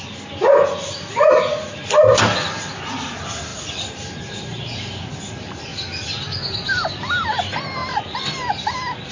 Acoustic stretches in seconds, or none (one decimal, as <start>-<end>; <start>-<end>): 0.0-9.1